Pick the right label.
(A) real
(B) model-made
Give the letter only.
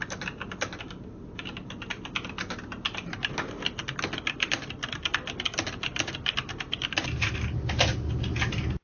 A